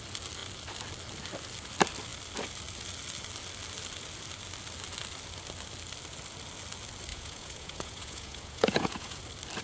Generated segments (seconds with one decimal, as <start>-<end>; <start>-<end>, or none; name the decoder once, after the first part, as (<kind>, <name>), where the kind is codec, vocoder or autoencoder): 7.1-9.2 (vocoder, Vocos)